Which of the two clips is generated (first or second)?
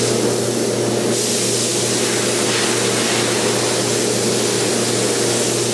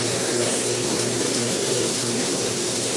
second